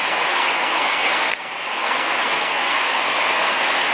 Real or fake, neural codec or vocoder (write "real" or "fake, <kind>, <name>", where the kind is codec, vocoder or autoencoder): fake, codec, SNAC